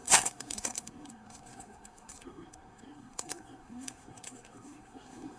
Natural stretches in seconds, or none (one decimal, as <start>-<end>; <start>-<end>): none